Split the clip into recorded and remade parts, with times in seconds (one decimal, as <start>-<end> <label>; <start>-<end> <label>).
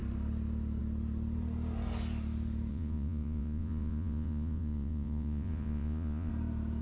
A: 0.0-2.7 recorded; 2.7-6.3 remade; 6.3-6.8 recorded